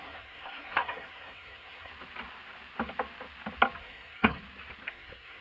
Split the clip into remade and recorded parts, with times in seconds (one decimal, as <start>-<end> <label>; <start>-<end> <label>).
0.0-1.9 remade; 1.9-3.8 recorded; 3.8-4.4 remade; 4.4-4.9 recorded; 4.9-5.4 remade